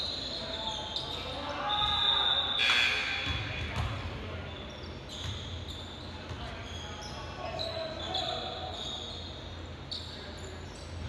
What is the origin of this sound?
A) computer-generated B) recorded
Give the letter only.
B